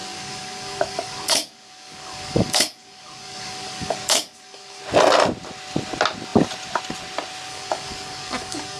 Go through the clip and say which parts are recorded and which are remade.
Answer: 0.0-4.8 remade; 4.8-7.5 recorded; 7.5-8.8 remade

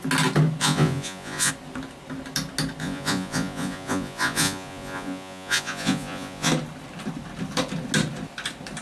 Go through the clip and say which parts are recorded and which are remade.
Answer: 0.0-0.6 recorded; 0.6-1.5 remade; 1.5-2.8 recorded; 2.8-6.5 remade; 6.5-8.8 recorded

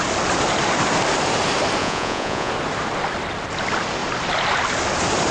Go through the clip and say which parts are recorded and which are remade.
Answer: 0.0-1.8 recorded; 1.8-2.5 remade; 2.5-5.3 recorded

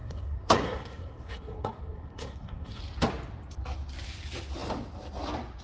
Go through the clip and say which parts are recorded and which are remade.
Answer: 0.0-2.8 remade; 2.8-5.6 recorded

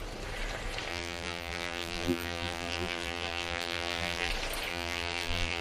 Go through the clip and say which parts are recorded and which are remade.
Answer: 0.0-0.9 recorded; 0.9-4.3 remade; 4.3-4.7 recorded; 4.7-5.6 remade